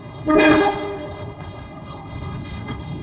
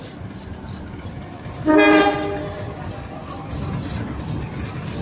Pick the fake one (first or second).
first